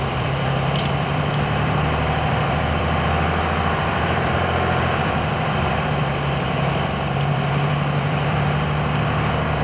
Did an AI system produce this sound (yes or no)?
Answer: yes